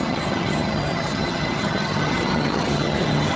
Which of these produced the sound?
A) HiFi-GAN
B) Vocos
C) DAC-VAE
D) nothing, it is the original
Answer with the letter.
A